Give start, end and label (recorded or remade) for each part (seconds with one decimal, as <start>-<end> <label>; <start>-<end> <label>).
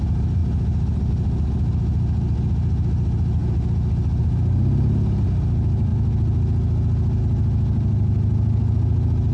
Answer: 0.0-9.3 recorded